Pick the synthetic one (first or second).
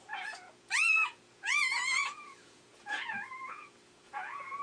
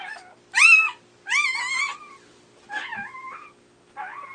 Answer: first